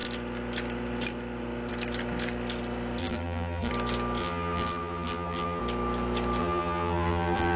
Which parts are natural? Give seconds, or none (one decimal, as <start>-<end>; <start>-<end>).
0.0-3.0; 3.7-4.2; 5.6-6.4